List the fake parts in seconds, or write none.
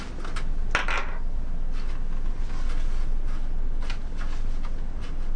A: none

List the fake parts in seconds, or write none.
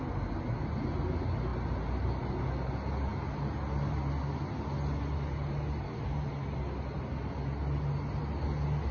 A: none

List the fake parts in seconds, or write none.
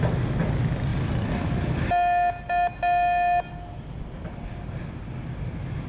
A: none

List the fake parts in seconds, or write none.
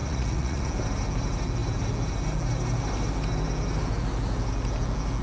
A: 0.0-0.7 (vocoder, Vocos)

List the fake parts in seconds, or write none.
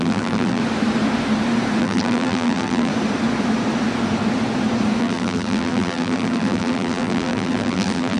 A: 0.0-0.6 (vocoder, BigVGAN v2); 1.8-2.9; 5.0-8.2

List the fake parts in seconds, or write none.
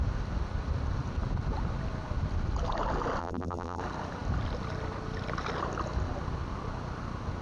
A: 3.2-3.8 (vocoder, BigVGAN v2)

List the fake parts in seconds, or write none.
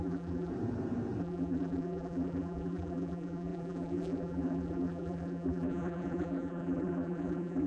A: 0.0-0.5 (vocoder, BigVGAN v2); 1.2-7.7